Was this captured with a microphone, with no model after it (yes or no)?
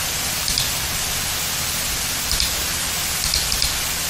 yes